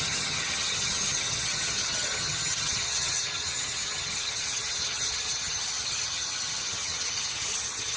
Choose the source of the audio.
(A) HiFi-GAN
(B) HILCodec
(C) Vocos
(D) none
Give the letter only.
A